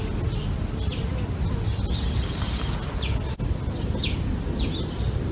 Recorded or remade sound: recorded